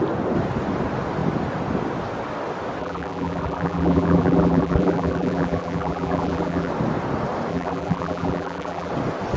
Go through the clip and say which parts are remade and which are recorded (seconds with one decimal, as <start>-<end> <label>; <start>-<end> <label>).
0.0-2.8 recorded; 2.8-6.7 remade; 6.7-7.5 recorded; 7.5-8.9 remade; 8.9-9.4 recorded